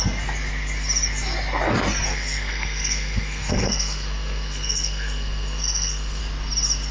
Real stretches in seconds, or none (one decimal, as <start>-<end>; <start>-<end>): 0.0-2.1; 6.2-6.9

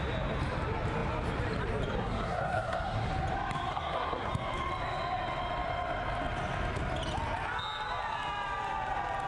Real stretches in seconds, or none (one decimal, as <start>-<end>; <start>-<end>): 0.0-2.0; 3.1-3.7; 4.3-9.3

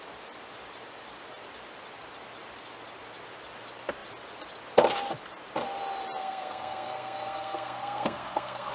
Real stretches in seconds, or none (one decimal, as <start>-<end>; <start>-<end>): 0.0-6.2

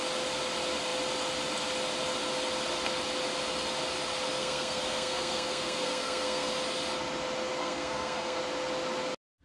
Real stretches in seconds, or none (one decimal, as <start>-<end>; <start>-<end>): 0.0-4.4; 6.5-7.6; 8.4-9.4

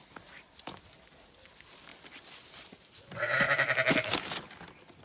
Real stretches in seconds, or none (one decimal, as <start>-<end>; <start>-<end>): 0.0-5.0

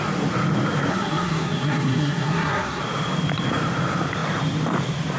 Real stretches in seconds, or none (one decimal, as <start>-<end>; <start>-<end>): 0.0-0.9; 2.8-5.2

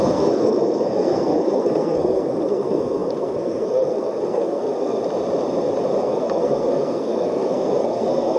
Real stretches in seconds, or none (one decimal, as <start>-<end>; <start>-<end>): 5.0-6.0

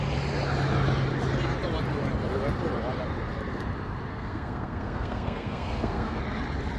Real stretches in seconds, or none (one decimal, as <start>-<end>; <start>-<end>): 0.0-4.1; 6.2-6.8